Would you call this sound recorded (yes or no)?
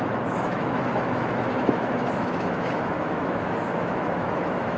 no